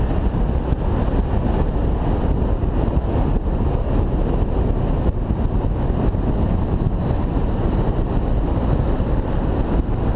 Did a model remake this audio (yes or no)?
no